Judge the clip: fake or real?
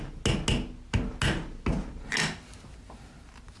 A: real